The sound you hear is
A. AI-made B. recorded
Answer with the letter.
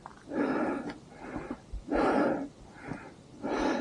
B